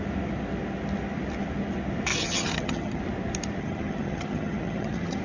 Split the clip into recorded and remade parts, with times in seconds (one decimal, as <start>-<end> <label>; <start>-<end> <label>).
0.0-2.1 recorded; 2.1-3.0 remade; 3.0-3.6 recorded; 3.6-5.2 remade